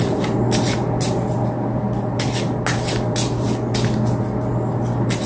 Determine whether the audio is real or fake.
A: real